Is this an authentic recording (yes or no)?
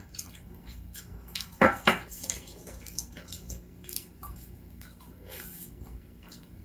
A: no